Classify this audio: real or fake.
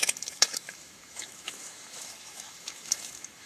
fake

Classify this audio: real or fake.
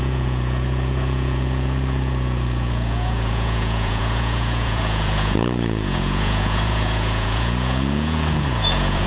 fake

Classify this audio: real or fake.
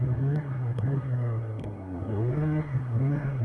fake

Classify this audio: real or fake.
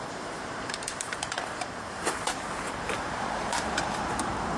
fake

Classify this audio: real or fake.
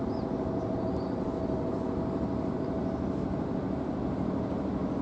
fake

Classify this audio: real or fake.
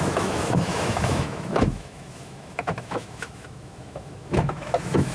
fake